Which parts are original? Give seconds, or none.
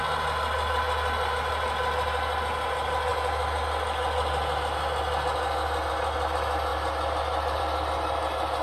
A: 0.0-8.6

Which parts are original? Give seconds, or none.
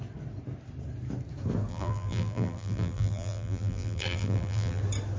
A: 0.0-1.7; 4.8-5.2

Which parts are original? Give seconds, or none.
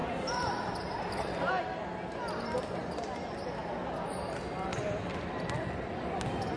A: 1.5-6.6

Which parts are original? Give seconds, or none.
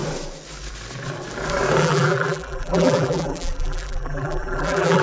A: 0.0-1.8